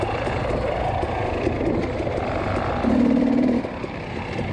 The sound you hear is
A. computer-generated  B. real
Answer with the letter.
B